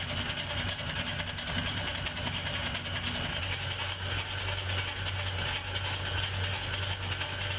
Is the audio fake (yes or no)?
no